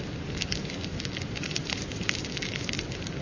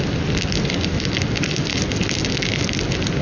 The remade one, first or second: first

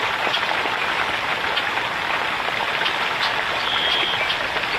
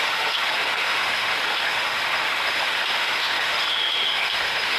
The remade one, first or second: second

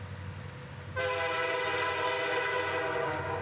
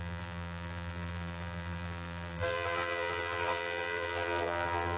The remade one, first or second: second